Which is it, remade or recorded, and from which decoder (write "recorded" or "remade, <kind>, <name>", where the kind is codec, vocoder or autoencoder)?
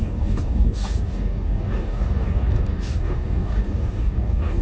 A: remade, codec, DAC